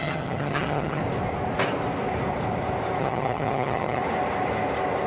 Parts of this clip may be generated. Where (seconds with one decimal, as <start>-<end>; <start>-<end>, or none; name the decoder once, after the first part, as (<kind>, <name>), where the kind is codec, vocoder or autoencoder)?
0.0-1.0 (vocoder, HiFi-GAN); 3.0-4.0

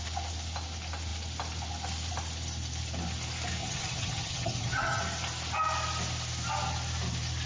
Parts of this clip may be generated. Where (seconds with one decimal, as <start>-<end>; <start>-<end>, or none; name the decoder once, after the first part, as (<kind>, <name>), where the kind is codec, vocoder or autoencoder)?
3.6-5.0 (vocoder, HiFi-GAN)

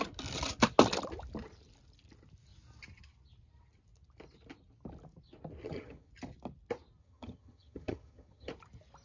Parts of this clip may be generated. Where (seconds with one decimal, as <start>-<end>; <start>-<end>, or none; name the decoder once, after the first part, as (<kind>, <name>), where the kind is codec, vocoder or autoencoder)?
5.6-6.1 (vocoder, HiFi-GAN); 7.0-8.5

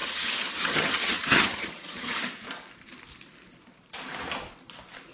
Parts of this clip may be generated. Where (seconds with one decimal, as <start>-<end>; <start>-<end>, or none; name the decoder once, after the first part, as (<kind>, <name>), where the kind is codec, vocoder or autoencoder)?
0.0-2.2 (vocoder, HiFi-GAN)

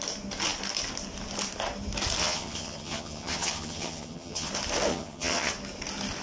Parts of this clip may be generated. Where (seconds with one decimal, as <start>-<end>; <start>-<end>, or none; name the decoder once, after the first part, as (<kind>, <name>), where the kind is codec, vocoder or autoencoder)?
2.2-4.5 (vocoder, HiFi-GAN); 4.9-5.5